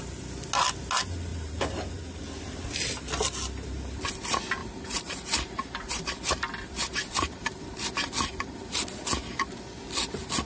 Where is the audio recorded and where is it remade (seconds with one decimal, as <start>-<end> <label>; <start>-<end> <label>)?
0.0-1.3 recorded; 1.3-2.0 remade; 2.0-4.6 recorded; 4.6-6.1 remade; 6.1-6.9 recorded; 6.9-7.7 remade; 7.7-10.5 recorded